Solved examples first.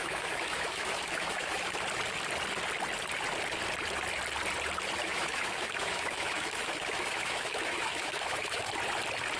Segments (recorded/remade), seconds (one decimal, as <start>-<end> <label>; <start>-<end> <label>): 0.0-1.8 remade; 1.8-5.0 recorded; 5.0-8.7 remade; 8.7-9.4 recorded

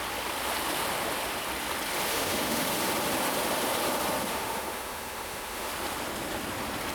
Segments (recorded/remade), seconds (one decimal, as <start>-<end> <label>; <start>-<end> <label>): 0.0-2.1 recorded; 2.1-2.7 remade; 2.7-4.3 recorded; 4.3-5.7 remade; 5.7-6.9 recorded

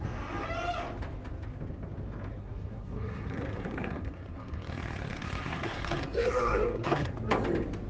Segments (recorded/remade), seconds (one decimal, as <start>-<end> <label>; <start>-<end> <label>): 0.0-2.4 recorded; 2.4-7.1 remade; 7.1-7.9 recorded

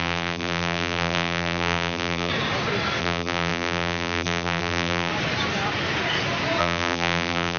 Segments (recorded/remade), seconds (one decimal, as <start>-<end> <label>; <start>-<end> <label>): 0.0-2.3 remade; 2.3-3.0 recorded; 3.0-5.1 remade; 5.1-6.6 recorded; 6.6-7.6 remade

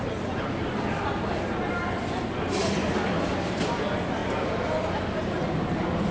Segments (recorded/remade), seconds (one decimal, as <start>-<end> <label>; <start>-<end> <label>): 0.0-6.1 recorded